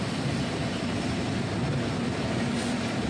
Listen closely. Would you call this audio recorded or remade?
recorded